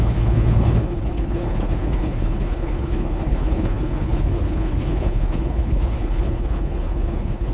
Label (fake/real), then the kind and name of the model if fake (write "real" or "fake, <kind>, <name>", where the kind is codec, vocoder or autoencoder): fake, codec, HILCodec